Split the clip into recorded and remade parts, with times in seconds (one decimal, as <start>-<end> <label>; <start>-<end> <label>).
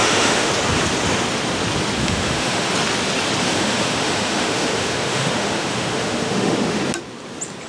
0.0-0.5 remade; 0.5-2.0 recorded; 2.0-2.7 remade; 2.7-3.4 recorded; 3.4-6.8 remade; 6.8-7.7 recorded